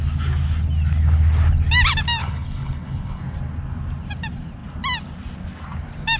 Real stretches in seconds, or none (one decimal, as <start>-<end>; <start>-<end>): 0.0-2.2; 3.2-6.2